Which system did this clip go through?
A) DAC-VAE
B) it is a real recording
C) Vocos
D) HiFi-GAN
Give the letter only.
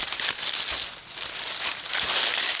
B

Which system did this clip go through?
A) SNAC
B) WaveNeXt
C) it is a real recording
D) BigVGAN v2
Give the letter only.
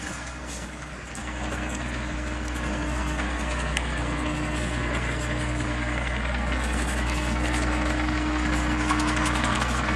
A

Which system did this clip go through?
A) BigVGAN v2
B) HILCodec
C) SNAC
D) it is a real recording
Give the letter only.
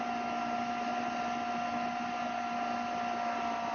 D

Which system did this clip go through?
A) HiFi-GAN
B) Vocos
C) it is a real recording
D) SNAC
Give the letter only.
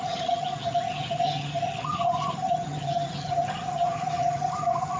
A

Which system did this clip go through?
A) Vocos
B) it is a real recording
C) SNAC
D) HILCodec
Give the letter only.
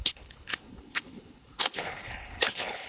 D